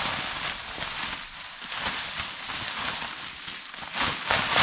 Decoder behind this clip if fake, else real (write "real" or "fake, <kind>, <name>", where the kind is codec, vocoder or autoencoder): real